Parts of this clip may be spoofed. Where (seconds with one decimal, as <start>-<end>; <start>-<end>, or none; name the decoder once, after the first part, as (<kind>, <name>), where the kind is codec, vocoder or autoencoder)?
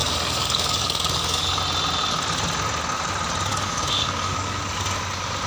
0.0-1.6 (codec, DAC); 3.5-4.6